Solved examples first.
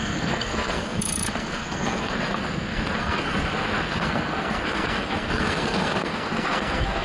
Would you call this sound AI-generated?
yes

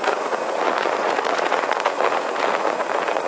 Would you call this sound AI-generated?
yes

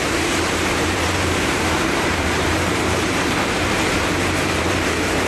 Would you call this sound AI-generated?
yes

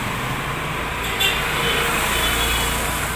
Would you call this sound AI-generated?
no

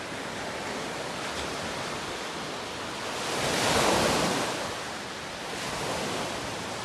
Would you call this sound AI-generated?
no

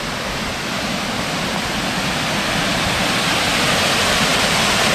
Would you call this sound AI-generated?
no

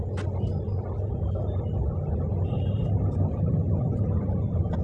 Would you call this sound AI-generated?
no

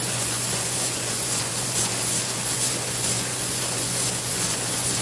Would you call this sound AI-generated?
yes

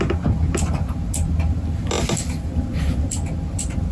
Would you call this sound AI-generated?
no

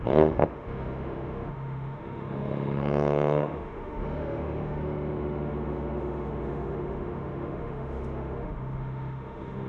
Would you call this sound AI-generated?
yes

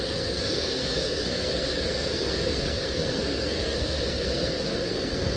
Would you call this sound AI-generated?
yes